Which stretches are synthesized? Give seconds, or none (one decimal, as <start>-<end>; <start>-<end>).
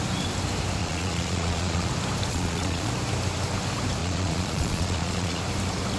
0.8-1.9; 2.3-2.9; 4.0-5.4